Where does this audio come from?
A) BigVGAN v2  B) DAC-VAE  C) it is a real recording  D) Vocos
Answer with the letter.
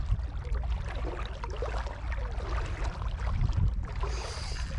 C